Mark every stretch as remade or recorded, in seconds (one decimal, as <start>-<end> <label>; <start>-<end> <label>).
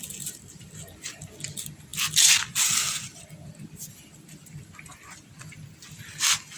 0.0-6.6 recorded